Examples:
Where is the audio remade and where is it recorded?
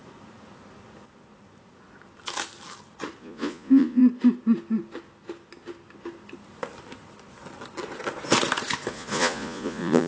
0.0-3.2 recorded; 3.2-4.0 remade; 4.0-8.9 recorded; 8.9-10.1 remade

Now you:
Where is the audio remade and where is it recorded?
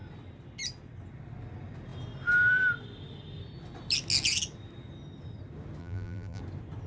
0.0-5.8 recorded; 5.8-6.4 remade; 6.4-6.9 recorded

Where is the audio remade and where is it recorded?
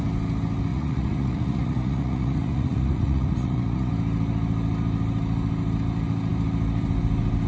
0.0-0.7 recorded; 0.7-3.9 remade; 3.9-7.5 recorded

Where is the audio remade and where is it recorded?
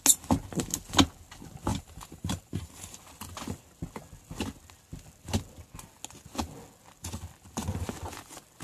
0.0-1.7 recorded; 1.7-3.0 remade; 3.0-8.6 recorded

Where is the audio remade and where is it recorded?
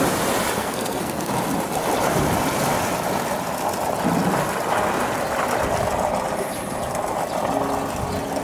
0.0-0.6 recorded; 0.6-1.3 remade; 1.3-8.4 recorded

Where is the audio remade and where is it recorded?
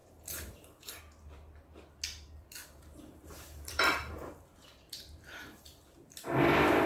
0.0-1.0 remade; 1.0-2.6 recorded; 2.6-5.8 remade; 5.8-6.9 recorded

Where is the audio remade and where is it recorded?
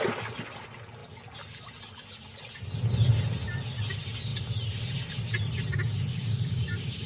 0.0-6.1 recorded; 6.1-7.1 remade